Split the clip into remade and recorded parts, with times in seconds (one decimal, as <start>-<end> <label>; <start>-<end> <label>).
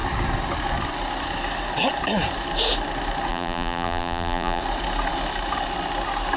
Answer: 0.0-3.3 recorded; 3.3-4.6 remade; 4.6-6.4 recorded